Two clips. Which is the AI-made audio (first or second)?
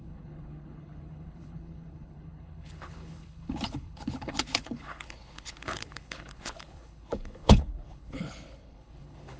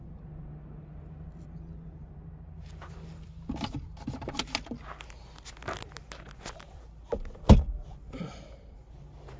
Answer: first